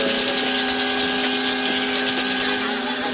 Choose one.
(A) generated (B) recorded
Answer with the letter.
B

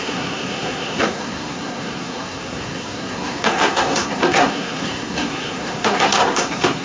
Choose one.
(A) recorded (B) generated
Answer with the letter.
B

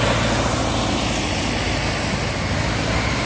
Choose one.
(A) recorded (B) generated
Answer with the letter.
A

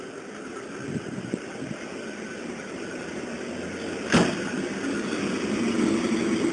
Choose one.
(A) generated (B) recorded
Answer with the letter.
B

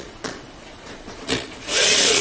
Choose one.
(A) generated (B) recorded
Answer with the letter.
A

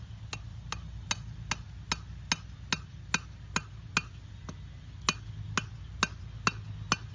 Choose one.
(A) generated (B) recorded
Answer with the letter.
B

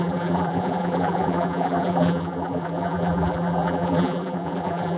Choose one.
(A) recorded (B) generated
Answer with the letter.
B